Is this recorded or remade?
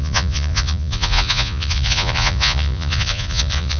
remade